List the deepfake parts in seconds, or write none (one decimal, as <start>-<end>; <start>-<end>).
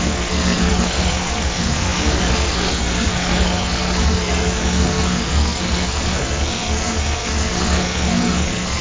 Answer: 0.0-8.8